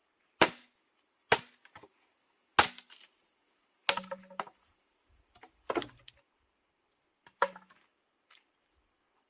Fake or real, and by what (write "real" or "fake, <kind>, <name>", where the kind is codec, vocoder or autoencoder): real